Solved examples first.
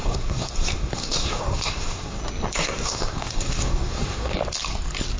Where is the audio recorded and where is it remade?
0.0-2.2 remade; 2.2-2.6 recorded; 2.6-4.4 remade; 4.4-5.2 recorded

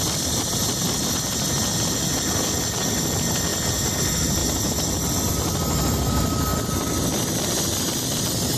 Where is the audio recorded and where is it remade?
0.0-8.6 recorded

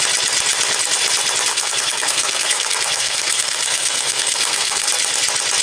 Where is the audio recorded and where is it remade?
0.0-1.5 recorded; 1.5-4.9 remade; 4.9-5.6 recorded

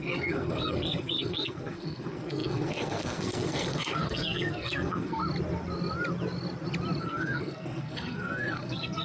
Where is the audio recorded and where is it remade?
0.0-5.2 remade; 5.2-7.0 recorded; 7.0-9.0 remade

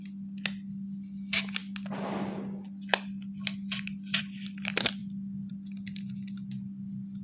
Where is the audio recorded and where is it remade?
0.0-7.2 recorded

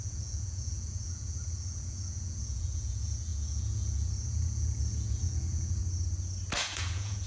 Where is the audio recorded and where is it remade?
0.0-5.8 remade; 5.8-6.6 recorded; 6.6-7.3 remade

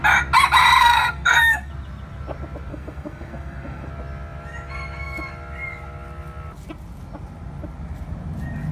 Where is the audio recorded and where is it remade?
0.0-0.8 recorded; 0.8-1.7 remade; 1.7-2.7 recorded; 2.7-3.9 remade; 3.9-8.7 recorded

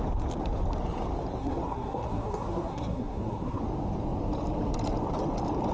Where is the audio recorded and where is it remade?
0.0-1.4 recorded; 1.4-3.6 remade; 3.6-5.7 recorded